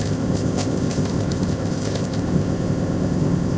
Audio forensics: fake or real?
fake